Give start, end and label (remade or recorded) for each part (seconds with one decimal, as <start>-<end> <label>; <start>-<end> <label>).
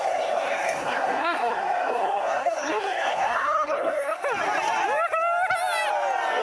0.0-4.2 remade; 4.2-6.4 recorded